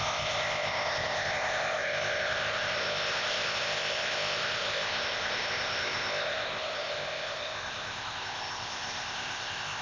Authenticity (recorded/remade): remade